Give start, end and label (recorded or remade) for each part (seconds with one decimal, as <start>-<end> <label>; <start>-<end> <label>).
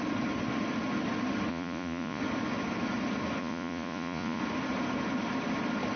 0.0-1.5 recorded; 1.5-2.2 remade; 2.2-3.4 recorded; 3.4-4.4 remade; 4.4-6.0 recorded